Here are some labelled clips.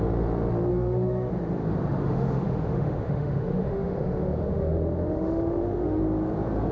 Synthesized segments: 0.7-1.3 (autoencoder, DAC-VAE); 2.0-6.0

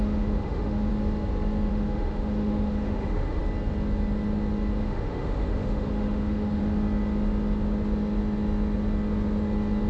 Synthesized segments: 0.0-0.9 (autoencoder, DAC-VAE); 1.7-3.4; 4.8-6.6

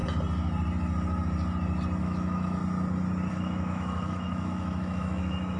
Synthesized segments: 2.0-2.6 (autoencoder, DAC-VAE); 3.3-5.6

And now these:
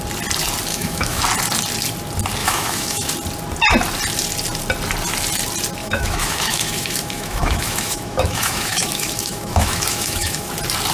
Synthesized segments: 0.7-1.2 (autoencoder, DAC-VAE); 2.4-3.1; 5.8-10.5

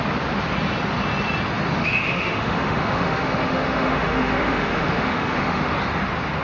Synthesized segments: 1.8-5.6 (autoencoder, DAC-VAE)